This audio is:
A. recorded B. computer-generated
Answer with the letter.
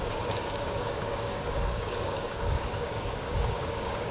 B